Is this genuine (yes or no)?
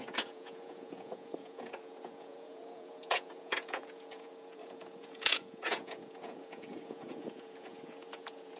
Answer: no